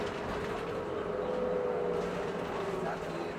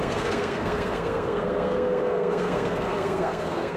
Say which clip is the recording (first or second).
first